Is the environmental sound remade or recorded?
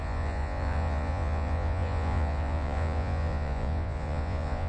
remade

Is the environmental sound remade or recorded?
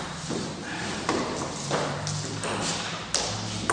recorded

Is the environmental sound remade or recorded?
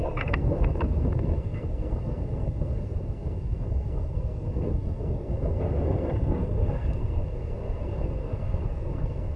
remade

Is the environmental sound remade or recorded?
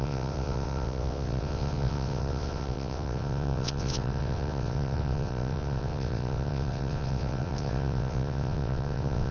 remade